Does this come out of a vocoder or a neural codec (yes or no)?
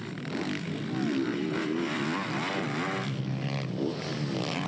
no